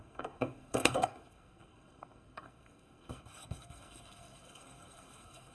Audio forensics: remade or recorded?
remade